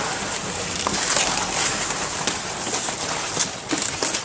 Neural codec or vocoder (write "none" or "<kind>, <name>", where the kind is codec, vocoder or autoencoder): none